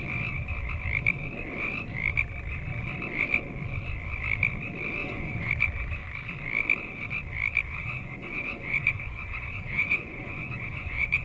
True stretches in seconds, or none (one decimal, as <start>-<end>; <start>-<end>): 0.0-5.0; 5.5-7.8